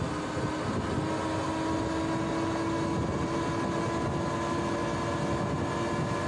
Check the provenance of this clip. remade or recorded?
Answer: recorded